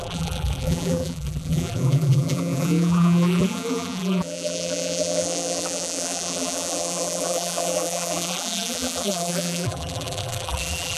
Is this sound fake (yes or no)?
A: yes